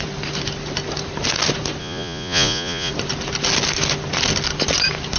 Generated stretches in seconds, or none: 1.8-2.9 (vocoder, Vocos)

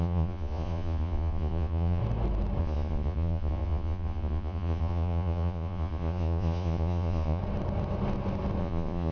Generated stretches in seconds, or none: 0.0-2.0 (vocoder, Vocos); 2.6-7.4; 8.6-9.1

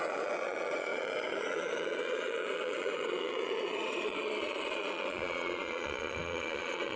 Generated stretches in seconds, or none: 0.0-7.0 (vocoder, Vocos)

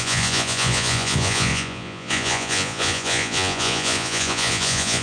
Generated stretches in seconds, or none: 0.0-5.0 (vocoder, Vocos)

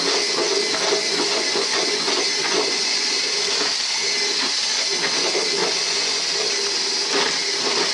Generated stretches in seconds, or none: 1.0-2.0 (vocoder, Vocos); 2.4-3.2; 5.6-6.2

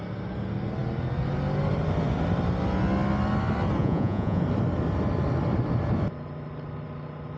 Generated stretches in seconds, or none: 3.8-4.4 (vocoder, Vocos)